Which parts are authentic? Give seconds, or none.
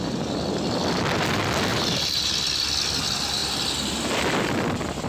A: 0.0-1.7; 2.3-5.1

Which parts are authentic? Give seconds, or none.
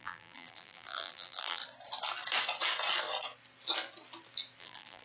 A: 1.6-4.6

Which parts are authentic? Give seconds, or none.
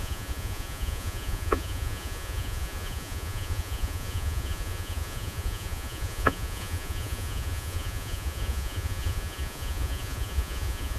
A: none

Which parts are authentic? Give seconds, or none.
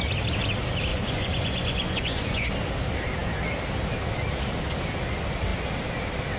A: 0.0-0.9; 2.5-6.4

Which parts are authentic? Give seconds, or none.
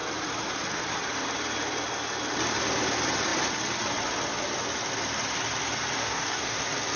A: 0.0-6.0; 6.6-7.0